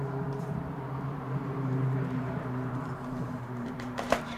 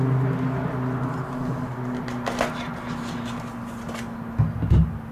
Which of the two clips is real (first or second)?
second